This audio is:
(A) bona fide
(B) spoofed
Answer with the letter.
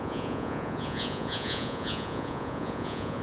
B